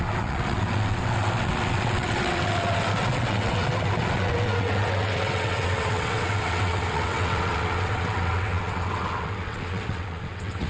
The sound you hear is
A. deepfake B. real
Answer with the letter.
A